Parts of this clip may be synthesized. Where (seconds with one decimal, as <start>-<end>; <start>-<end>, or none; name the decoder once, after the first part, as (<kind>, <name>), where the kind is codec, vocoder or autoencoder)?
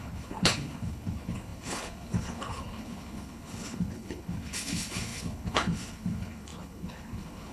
0.0-7.5 (codec, HILCodec)